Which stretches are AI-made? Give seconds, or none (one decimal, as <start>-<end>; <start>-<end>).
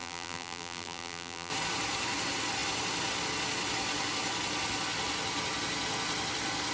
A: 0.0-1.5